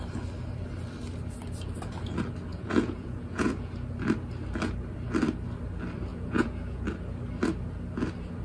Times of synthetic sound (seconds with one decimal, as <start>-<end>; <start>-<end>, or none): 2.5-3.7; 6.1-6.9